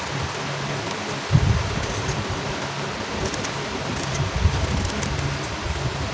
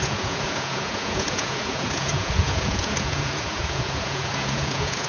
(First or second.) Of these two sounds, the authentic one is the first